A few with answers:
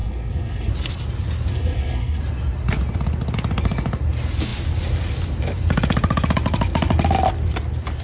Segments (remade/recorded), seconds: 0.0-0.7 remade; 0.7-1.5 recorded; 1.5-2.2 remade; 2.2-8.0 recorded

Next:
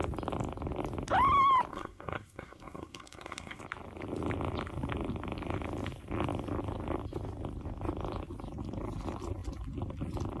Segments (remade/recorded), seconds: 0.0-1.7 recorded; 1.7-3.6 remade; 3.6-10.4 recorded

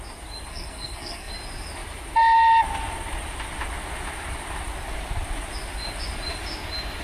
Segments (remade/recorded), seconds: 0.0-0.5 recorded; 0.5-1.3 remade; 1.3-7.0 recorded

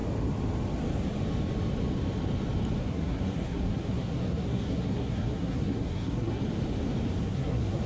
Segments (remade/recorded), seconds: 0.0-2.8 recorded; 2.8-6.4 remade; 6.4-7.2 recorded; 7.2-7.9 remade